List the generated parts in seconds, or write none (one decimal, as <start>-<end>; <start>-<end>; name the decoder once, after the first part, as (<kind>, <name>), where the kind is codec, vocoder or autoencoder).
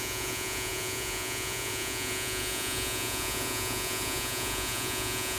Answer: 0.0-5.4 (vocoder, Vocos)